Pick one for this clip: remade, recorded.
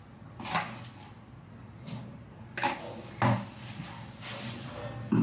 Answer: recorded